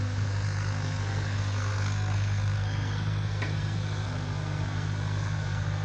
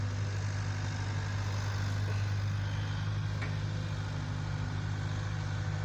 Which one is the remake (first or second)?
first